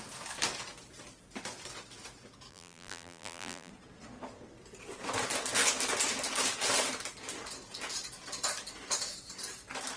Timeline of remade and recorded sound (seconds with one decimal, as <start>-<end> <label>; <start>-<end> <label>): 0.0-2.5 recorded; 2.5-3.7 remade; 3.7-10.0 recorded